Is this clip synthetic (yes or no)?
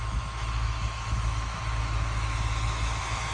yes